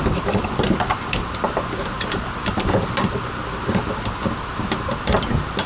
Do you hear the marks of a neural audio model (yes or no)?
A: no